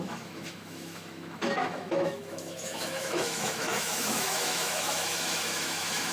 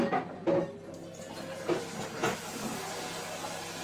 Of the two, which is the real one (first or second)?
second